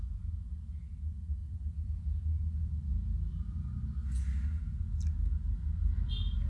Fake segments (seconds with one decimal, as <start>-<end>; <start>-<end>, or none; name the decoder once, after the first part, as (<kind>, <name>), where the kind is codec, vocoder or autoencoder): 1.4-2.9 (vocoder, BigVGAN v2)